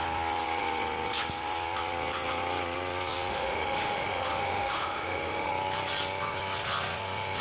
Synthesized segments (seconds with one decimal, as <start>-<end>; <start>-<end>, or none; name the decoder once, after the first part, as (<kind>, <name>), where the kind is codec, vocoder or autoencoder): 3.3-5.5 (autoencoder, DAC-VAE)